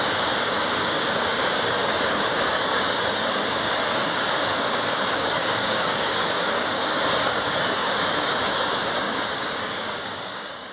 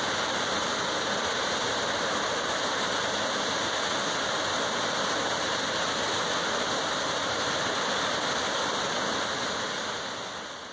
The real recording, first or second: second